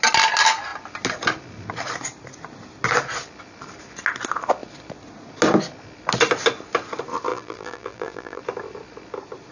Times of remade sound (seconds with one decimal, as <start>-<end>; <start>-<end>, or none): 7.3-8.4